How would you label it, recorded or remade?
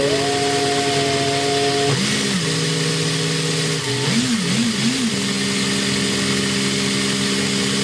recorded